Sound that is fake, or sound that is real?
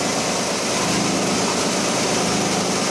real